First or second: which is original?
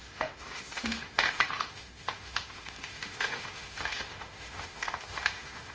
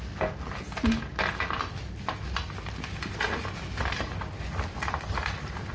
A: second